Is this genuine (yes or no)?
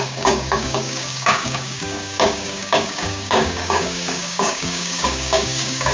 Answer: no